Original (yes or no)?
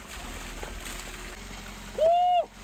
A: yes